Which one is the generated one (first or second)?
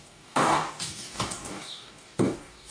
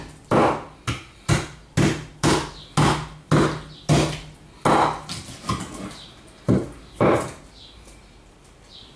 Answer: first